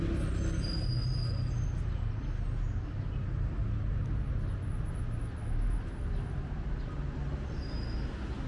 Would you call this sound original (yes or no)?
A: yes